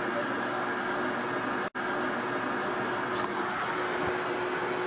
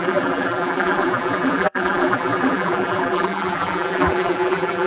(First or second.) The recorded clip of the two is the first